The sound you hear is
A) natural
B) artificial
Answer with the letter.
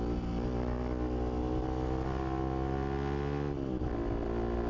A